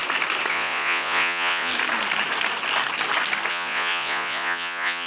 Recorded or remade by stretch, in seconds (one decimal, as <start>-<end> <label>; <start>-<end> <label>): 0.0-0.5 recorded; 0.5-1.7 remade; 1.7-3.5 recorded; 3.5-5.1 remade